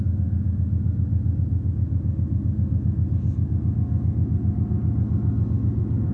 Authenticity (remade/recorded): recorded